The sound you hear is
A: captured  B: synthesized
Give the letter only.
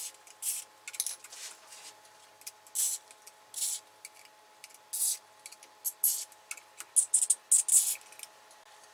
A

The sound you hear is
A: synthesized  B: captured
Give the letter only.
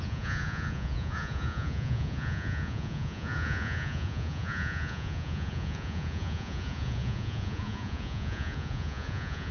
A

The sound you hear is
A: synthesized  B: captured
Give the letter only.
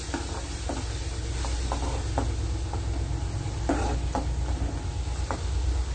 B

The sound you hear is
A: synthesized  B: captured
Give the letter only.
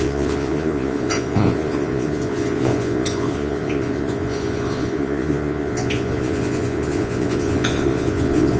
A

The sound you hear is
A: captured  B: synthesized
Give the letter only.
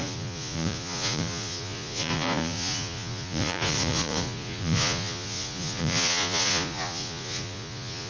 B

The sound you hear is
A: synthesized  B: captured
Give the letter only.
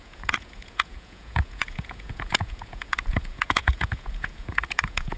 A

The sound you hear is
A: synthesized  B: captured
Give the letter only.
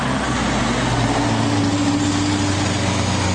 B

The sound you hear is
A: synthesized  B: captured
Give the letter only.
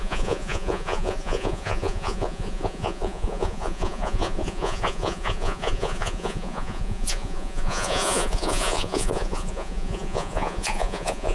A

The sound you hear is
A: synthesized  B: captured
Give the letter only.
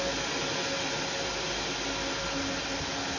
B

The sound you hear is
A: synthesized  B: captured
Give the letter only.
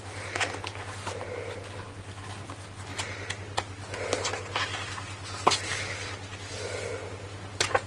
B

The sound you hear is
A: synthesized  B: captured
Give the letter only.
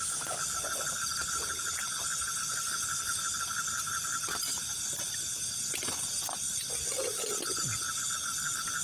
B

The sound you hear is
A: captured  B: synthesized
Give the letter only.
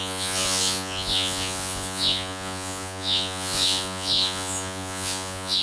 B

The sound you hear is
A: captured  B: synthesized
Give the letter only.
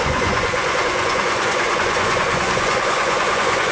B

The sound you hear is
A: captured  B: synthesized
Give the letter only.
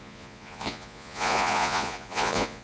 B